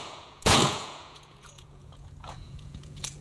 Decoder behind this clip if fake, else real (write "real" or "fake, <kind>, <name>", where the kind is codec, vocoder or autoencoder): fake, vocoder, Vocos